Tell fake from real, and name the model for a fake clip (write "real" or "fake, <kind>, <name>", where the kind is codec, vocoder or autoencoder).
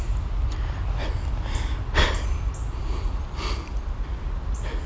real